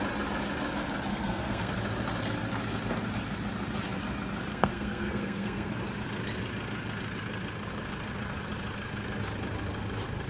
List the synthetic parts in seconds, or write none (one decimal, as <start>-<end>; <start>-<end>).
1.1-1.7; 4.5-5.7